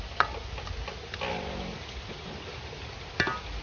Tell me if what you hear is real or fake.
real